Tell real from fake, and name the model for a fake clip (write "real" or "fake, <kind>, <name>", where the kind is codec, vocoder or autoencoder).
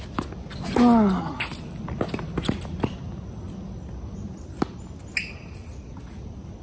real